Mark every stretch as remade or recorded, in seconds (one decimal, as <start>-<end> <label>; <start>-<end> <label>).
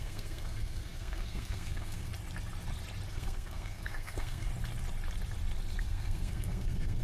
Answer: 0.0-2.1 remade; 2.1-3.1 recorded; 3.1-4.5 remade; 4.5-5.8 recorded; 5.8-7.0 remade